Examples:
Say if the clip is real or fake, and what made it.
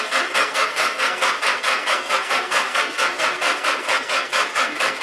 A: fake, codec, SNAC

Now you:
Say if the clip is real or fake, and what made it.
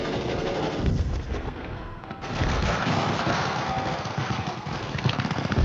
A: fake, codec, SNAC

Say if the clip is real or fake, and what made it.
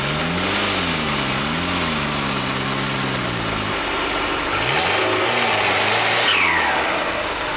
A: real